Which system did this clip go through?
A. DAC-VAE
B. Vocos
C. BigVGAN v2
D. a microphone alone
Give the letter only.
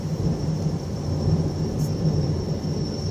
C